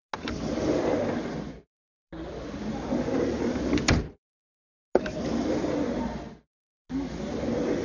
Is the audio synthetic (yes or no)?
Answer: no